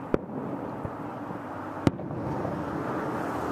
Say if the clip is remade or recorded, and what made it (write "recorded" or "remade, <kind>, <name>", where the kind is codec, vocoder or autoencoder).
recorded